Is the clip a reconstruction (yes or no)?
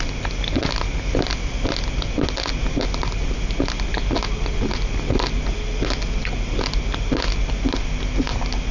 no